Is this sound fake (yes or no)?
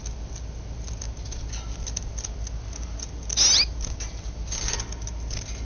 no